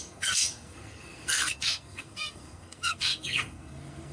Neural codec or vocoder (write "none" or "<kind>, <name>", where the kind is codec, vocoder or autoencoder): codec, SNAC